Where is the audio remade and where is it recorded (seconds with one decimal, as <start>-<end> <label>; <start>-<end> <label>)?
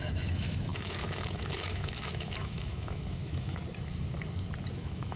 0.0-3.6 remade; 3.6-4.8 recorded; 4.8-5.2 remade